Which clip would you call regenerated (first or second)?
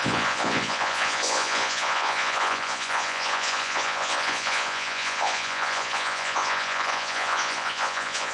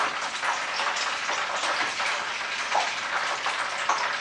first